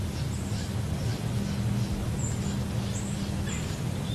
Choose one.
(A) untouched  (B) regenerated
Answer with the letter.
A